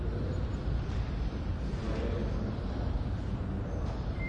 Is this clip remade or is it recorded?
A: recorded